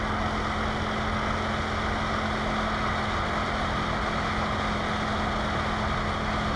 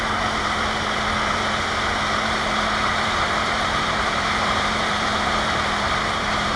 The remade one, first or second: second